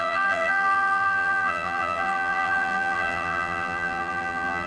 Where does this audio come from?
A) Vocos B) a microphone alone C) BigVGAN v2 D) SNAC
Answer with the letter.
C